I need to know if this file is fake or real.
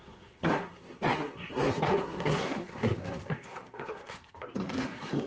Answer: fake